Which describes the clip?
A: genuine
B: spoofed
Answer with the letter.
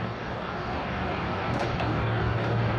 B